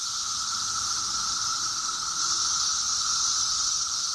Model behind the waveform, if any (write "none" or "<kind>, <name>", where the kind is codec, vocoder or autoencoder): none